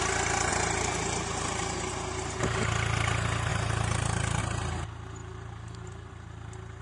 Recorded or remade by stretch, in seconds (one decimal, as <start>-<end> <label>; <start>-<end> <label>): 0.0-0.5 recorded; 0.5-1.9 remade; 1.9-3.5 recorded; 3.5-4.4 remade; 4.4-5.2 recorded; 5.2-6.1 remade; 6.1-6.8 recorded